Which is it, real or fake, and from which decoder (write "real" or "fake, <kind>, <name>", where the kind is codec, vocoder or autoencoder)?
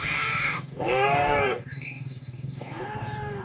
fake, codec, DAC